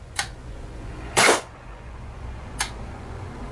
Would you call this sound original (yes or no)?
no